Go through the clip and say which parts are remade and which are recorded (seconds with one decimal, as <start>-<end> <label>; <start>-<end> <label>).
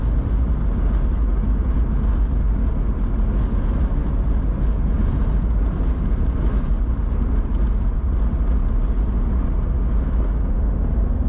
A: 0.0-1.3 recorded; 1.3-1.9 remade; 1.9-11.3 recorded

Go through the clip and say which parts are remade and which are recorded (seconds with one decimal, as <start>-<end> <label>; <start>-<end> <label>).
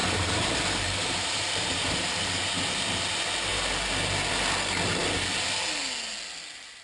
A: 0.0-2.1 remade; 2.1-6.8 recorded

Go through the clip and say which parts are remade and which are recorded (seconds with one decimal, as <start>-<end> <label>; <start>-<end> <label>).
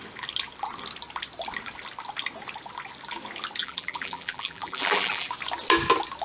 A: 0.0-3.6 recorded; 3.6-5.3 remade; 5.3-6.2 recorded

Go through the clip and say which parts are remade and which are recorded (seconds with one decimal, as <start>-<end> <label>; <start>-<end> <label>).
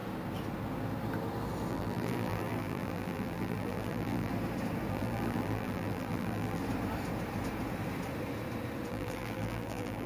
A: 0.0-1.7 recorded; 1.7-4.3 remade; 4.3-4.9 recorded; 4.9-6.6 remade; 6.6-8.9 recorded; 8.9-10.1 remade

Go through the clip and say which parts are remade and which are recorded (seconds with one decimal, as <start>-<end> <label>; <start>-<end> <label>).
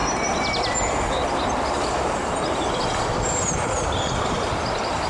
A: 0.0-1.9 recorded; 1.9-5.1 remade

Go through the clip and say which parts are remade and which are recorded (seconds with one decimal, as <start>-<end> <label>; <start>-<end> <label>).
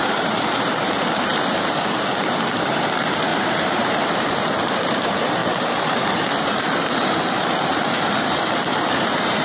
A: 0.0-9.4 remade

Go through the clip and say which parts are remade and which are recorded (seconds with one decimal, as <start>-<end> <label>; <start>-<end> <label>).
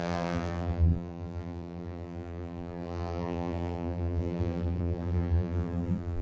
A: 0.0-6.2 remade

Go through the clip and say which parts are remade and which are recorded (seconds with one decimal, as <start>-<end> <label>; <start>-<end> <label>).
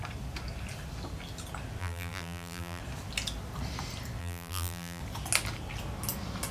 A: 0.0-1.8 recorded; 1.8-2.8 remade; 2.8-4.2 recorded; 4.2-5.0 remade; 5.0-6.5 recorded